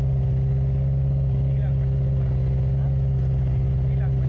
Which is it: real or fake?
real